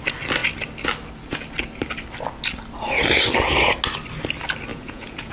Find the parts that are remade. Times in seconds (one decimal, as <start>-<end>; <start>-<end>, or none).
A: 4.7-5.3